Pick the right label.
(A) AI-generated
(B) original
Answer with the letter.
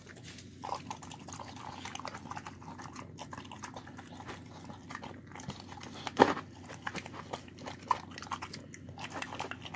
B